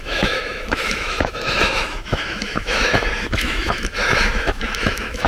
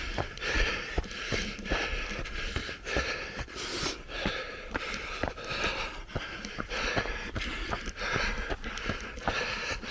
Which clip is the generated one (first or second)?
first